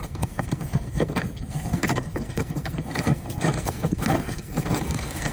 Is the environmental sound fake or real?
fake